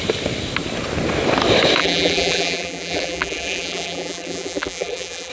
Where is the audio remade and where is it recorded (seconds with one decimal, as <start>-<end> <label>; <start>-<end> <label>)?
0.0-1.8 recorded; 1.8-5.3 remade